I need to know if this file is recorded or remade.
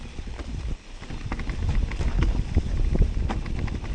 recorded